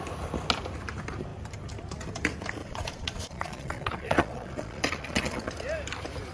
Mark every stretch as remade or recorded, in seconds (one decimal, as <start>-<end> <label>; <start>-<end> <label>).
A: 0.0-2.6 recorded; 2.6-5.5 remade; 5.5-6.3 recorded